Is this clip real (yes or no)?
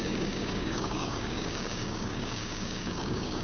no